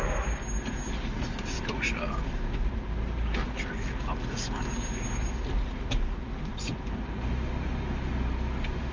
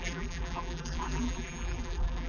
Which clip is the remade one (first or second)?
second